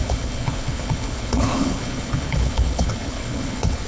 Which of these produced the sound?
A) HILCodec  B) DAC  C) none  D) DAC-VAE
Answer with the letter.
A